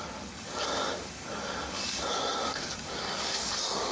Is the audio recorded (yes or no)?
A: no